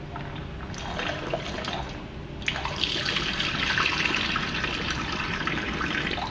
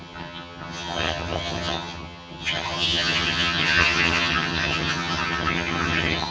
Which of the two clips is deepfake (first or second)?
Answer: second